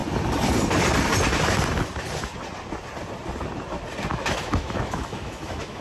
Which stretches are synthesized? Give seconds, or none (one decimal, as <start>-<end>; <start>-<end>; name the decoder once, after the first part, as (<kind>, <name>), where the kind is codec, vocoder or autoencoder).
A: 4.1-5.8 (autoencoder, DAC-VAE)